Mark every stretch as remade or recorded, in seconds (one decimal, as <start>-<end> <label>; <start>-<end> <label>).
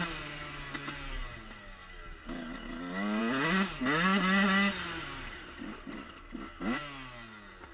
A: 0.0-7.7 recorded